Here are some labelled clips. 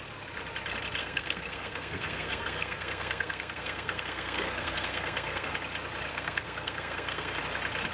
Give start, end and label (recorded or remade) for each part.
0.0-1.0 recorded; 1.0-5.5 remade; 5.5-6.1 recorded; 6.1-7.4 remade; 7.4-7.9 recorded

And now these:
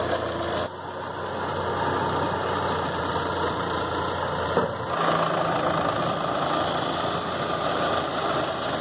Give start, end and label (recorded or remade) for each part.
0.0-8.8 recorded